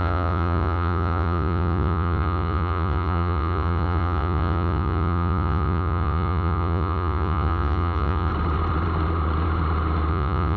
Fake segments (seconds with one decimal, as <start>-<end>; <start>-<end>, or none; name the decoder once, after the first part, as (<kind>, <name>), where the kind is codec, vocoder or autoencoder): 0.0-8.3 (vocoder, Vocos); 10.1-10.6